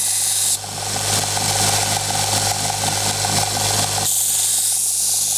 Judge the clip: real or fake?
real